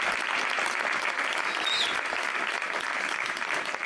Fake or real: real